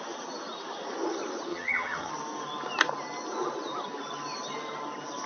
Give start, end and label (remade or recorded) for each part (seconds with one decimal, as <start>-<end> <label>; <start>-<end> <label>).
0.0-1.5 recorded; 1.5-2.1 remade; 2.1-5.3 recorded